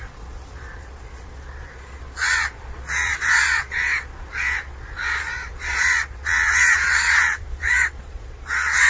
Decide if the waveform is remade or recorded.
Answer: remade